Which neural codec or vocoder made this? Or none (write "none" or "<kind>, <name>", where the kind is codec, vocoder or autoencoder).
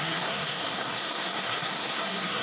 codec, SNAC